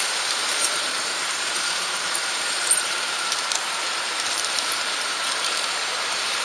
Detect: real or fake fake